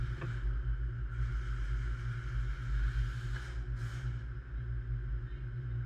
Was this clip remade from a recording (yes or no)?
no